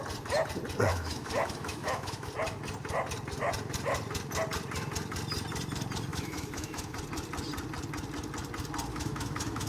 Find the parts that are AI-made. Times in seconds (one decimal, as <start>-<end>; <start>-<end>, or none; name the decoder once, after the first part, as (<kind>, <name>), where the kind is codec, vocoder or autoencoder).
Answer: 0.9-2.3 (autoencoder, DAC-VAE); 6.1-7.0; 8.9-9.7